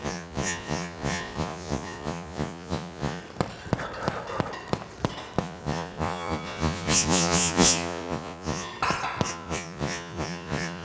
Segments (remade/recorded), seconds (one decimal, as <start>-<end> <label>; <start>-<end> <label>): 0.0-3.2 remade; 3.2-5.4 recorded; 5.4-8.7 remade; 8.7-9.3 recorded; 9.3-10.8 remade